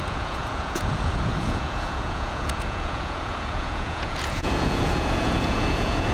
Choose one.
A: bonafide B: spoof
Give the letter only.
B